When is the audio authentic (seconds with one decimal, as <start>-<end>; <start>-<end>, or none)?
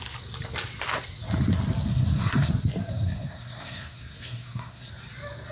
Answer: 0.0-1.9; 2.5-2.9; 4.9-5.5